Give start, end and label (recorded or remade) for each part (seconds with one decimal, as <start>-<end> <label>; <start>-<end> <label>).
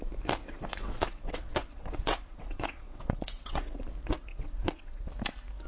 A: 0.0-0.4 recorded; 0.4-3.8 remade; 3.8-4.3 recorded; 4.3-5.1 remade; 5.1-5.7 recorded